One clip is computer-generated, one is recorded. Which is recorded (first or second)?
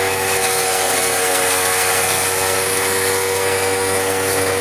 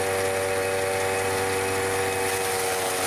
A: second